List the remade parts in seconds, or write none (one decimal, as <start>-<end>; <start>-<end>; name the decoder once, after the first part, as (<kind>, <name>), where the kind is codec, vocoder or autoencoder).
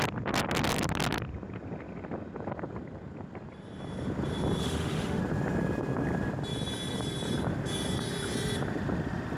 4.6-5.2 (autoencoder, DAC-VAE)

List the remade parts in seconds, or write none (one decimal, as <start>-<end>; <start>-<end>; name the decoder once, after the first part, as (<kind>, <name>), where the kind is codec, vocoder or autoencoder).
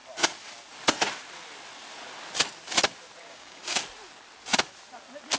3.2-3.8 (codec, DAC)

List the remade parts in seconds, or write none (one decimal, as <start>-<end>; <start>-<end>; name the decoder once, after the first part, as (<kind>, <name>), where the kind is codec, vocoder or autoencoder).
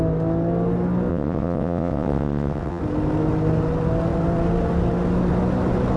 1.1-2.8 (vocoder, WaveNeXt)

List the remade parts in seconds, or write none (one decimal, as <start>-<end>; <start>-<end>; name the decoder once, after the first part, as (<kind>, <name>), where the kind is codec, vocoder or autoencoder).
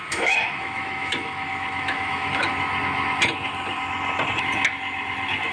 0.0-2.5 (autoencoder, DAC-VAE)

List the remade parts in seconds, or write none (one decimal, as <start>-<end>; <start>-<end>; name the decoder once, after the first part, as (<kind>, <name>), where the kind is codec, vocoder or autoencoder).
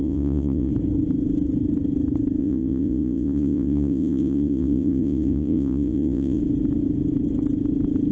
0.0-0.7 (vocoder, Vocos); 2.4-6.4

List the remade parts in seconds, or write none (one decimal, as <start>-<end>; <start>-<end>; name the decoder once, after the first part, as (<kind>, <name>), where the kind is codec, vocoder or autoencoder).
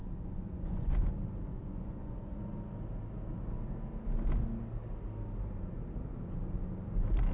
0.0-1.1 (vocoder, Vocos); 1.5-2.4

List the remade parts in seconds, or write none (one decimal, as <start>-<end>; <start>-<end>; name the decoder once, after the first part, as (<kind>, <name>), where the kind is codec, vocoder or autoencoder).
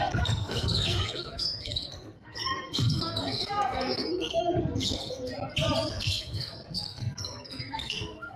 0.0-5.3 (codec, SNAC); 5.9-8.4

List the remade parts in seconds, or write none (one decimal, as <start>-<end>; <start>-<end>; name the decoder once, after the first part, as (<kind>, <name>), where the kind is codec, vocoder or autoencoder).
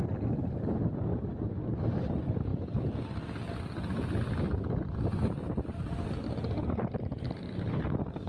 none